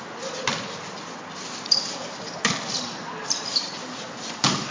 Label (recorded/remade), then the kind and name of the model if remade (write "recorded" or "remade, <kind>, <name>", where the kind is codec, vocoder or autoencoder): remade, vocoder, BigVGAN v2